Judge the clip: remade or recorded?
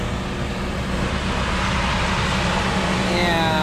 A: recorded